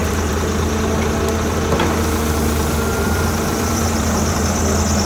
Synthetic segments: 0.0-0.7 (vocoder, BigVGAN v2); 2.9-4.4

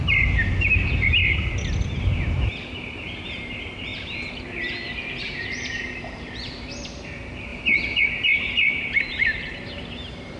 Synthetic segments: 0.0-1.2 (vocoder, BigVGAN v2); 2.0-10.4

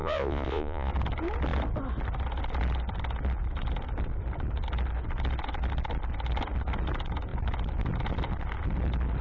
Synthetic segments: 0.0-0.9 (vocoder, Vocos)